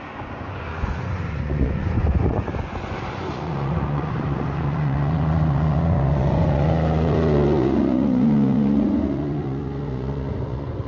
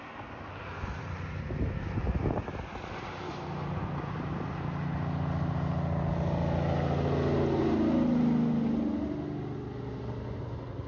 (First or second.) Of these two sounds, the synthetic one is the first